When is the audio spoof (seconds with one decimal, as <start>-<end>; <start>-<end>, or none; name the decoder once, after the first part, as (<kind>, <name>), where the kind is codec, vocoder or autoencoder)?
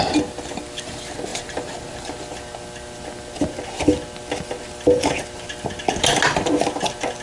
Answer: none